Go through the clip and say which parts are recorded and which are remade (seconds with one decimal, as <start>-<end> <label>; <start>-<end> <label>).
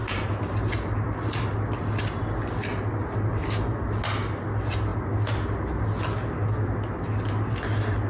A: 0.0-8.1 recorded